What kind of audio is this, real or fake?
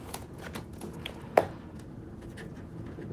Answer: fake